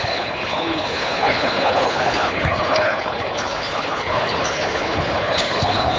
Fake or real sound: fake